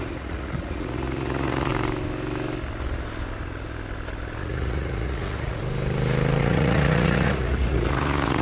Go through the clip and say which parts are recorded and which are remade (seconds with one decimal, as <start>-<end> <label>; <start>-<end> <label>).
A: 0.0-1.7 remade; 1.7-4.4 recorded; 4.4-5.6 remade; 5.6-6.4 recorded; 6.4-8.4 remade